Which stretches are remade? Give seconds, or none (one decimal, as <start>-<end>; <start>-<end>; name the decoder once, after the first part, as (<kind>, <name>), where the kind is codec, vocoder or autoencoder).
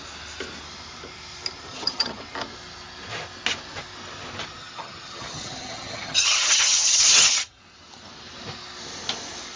1.7-2.2 (vocoder, HiFi-GAN); 4.6-7.6